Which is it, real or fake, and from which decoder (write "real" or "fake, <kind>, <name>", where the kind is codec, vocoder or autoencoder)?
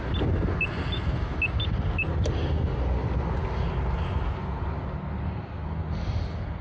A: real